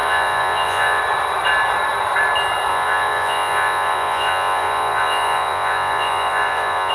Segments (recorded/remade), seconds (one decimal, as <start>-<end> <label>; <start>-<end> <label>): 0.0-1.0 remade; 1.0-2.7 recorded; 2.7-6.9 remade